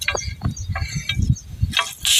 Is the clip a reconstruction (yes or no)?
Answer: no